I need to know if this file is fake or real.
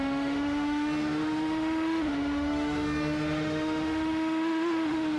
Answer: fake